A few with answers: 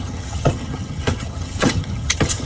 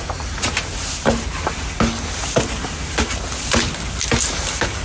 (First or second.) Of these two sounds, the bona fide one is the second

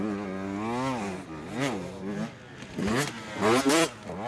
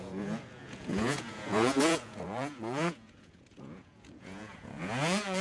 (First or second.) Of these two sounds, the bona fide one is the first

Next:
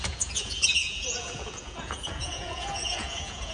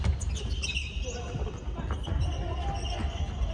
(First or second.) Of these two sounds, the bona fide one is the second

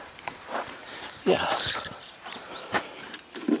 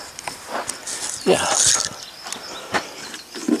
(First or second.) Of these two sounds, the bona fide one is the second